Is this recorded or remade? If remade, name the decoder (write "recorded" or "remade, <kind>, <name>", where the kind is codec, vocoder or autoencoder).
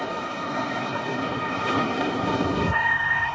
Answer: remade, codec, SNAC